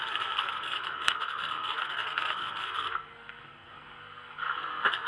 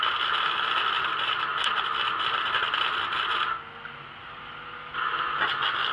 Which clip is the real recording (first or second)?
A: second